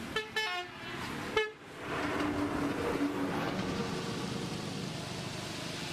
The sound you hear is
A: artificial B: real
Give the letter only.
B